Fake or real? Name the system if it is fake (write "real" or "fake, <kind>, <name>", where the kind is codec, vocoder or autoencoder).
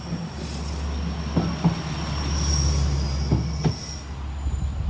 real